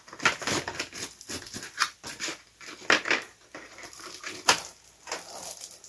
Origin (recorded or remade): recorded